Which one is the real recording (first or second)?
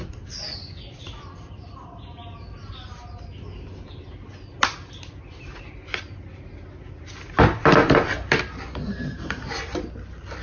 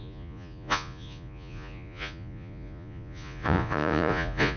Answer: first